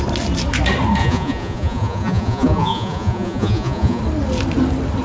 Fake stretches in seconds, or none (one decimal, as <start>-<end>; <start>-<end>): 1.0-4.0